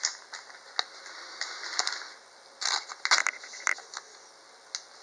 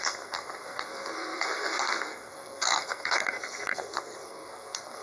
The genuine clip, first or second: first